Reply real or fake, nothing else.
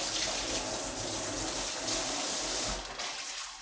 real